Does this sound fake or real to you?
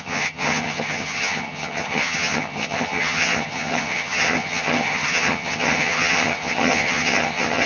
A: fake